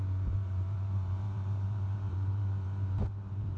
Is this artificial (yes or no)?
yes